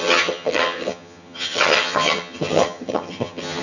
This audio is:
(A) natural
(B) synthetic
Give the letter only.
B